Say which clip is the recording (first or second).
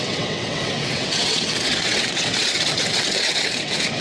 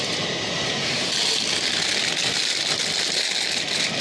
second